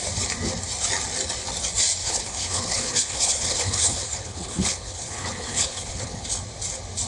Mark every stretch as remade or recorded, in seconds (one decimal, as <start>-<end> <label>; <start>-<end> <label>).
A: 0.0-2.0 recorded; 2.0-6.3 remade; 6.3-7.1 recorded